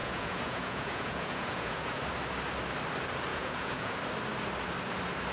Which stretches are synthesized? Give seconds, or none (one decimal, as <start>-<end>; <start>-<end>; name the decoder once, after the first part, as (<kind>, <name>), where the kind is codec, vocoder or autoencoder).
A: 0.0-2.0 (vocoder, Vocos); 3.3-4.0